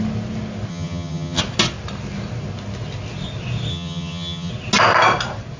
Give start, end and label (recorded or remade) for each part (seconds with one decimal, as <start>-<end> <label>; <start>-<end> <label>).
0.0-0.7 recorded; 0.7-1.4 remade; 1.4-3.7 recorded; 3.7-4.5 remade; 4.5-5.6 recorded

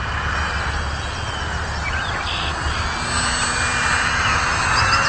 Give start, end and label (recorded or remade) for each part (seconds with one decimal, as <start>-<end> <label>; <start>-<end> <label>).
0.0-5.1 recorded